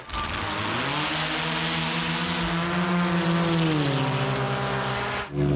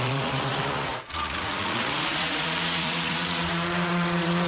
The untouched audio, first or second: first